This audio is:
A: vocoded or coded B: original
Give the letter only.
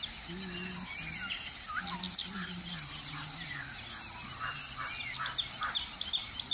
B